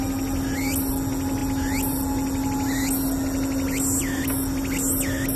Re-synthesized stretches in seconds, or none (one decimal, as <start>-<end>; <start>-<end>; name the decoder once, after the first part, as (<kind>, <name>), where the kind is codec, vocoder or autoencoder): none